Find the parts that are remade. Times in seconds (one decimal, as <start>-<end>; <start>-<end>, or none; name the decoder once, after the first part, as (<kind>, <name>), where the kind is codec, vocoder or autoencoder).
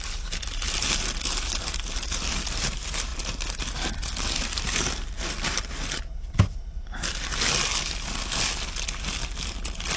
none